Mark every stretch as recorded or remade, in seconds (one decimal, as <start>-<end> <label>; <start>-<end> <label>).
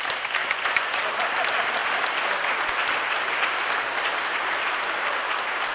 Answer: 0.0-0.4 recorded; 0.4-1.0 remade; 1.0-5.7 recorded